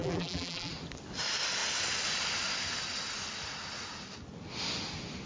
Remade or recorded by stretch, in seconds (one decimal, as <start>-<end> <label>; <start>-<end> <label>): 0.0-0.7 remade; 0.7-5.3 recorded